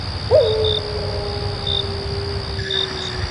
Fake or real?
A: real